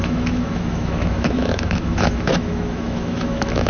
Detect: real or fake fake